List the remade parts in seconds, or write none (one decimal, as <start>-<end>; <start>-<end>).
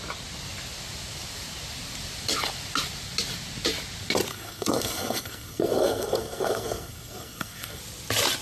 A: 4.3-7.8